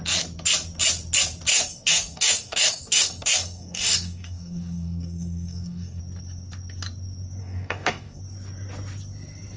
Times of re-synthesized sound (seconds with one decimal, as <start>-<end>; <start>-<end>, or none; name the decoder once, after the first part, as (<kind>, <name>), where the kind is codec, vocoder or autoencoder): 1.5-6.0 (codec, DAC); 7.4-8.2